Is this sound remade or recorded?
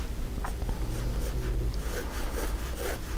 recorded